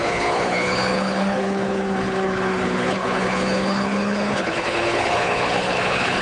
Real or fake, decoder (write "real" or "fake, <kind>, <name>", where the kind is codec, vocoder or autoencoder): fake, codec, HILCodec